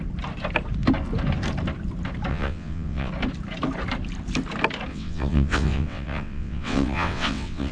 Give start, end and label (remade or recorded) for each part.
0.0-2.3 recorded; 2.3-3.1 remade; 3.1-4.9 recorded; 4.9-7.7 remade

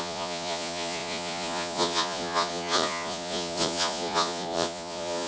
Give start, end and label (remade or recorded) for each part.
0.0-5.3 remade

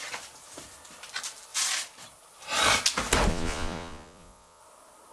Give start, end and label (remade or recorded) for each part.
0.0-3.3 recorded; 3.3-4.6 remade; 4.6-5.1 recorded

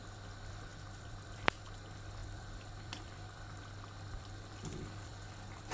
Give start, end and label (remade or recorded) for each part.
0.0-0.7 recorded; 0.7-1.6 remade; 1.6-2.2 recorded; 2.2-5.7 remade